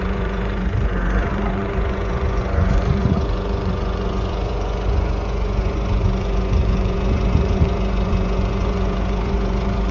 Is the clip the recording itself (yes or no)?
no